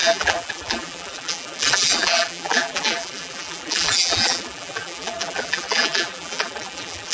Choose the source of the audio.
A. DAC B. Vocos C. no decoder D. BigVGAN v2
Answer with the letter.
D